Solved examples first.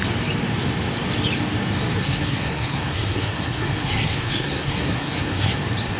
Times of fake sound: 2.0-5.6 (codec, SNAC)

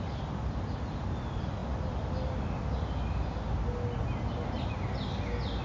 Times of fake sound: none

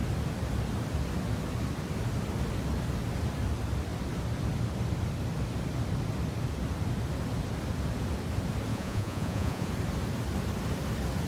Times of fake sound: 8.7-9.7 (vocoder, Vocos)

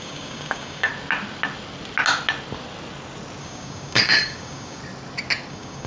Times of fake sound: 0.0-0.9 (codec, DAC); 3.4-4.8; 5.5-5.9

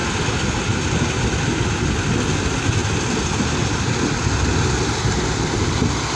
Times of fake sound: none